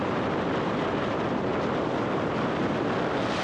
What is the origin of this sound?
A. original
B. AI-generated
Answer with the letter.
A